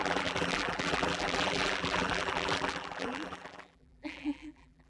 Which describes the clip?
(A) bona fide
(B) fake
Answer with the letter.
B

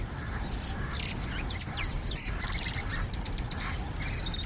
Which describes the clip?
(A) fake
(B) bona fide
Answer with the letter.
A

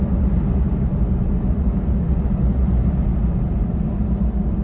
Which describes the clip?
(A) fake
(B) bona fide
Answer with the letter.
B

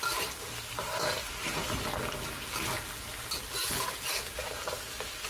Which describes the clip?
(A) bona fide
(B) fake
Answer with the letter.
A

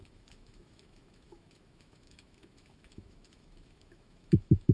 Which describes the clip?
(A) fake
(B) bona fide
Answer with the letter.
A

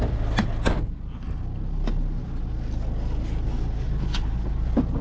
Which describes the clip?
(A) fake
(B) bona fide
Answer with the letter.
B